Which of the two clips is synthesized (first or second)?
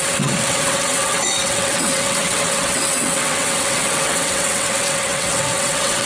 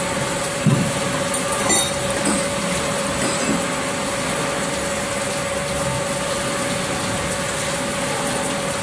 first